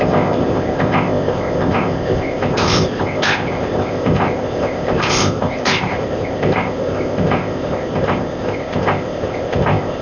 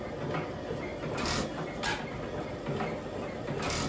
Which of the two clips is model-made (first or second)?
first